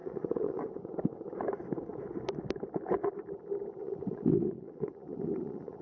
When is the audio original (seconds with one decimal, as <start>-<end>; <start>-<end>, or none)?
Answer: 0.6-3.8